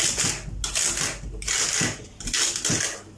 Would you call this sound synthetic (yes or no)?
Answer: no